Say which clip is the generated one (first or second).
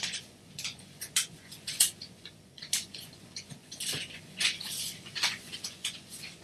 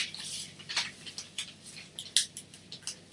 first